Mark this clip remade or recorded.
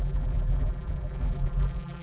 remade